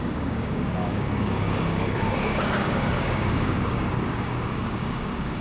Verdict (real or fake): fake